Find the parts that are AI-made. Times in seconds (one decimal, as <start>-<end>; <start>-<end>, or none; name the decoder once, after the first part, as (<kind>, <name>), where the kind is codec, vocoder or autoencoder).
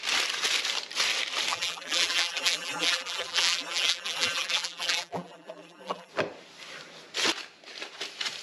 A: 1.5-6.1 (vocoder, BigVGAN v2)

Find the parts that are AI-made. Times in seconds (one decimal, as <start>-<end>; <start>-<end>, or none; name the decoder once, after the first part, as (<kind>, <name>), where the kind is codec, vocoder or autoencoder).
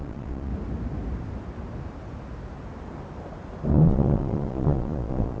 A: 0.0-0.5 (vocoder, Vocos); 3.7-5.4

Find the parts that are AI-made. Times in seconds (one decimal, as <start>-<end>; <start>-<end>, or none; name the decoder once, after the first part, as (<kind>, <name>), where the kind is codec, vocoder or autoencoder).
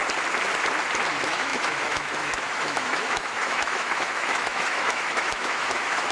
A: 1.1-6.1 (autoencoder, DAC-VAE)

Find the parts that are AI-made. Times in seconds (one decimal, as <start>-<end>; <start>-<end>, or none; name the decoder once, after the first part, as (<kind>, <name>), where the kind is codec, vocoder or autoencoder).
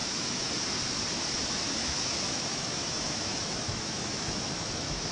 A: 0.0-0.5 (autoencoder, DAC-VAE); 1.8-5.1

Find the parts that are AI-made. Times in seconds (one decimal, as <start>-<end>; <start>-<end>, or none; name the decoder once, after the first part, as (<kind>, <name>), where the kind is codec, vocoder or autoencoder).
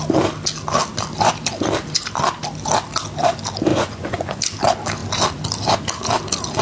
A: 3.7-4.4 (vocoder, Vocos)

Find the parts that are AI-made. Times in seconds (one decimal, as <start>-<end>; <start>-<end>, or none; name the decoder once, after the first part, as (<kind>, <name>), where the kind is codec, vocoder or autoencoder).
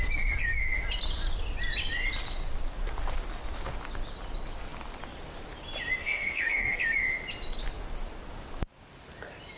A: 6.0-6.8 (codec, SNAC)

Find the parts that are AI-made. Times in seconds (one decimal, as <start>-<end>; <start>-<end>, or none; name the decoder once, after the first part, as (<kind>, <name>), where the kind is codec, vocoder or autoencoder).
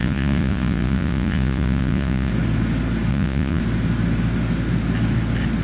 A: 0.0-2.3 (vocoder, Vocos); 3.1-3.6